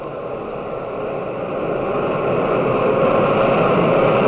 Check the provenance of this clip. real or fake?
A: real